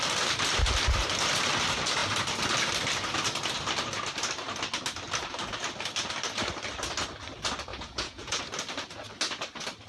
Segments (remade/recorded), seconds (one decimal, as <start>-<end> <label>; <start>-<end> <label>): 0.0-7.7 recorded; 7.7-8.4 remade; 8.4-9.9 recorded